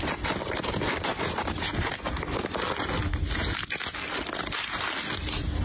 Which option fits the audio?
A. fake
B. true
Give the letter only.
B